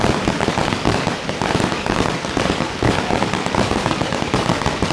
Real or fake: fake